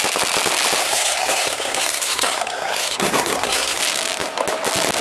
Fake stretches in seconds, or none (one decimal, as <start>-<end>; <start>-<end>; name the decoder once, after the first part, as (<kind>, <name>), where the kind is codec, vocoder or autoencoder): 0.8-3.8 (codec, SNAC)